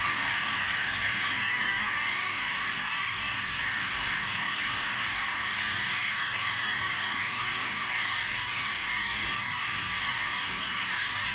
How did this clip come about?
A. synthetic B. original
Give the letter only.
A